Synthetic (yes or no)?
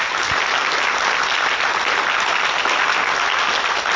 no